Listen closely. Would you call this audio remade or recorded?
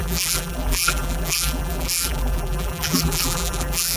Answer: remade